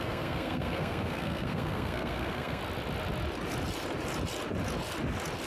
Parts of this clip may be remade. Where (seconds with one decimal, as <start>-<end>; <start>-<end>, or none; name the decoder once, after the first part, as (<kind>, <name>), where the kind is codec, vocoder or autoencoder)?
0.0-2.6 (codec, SNAC)